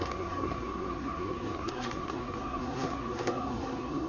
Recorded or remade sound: remade